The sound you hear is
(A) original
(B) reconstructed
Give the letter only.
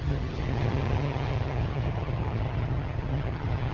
B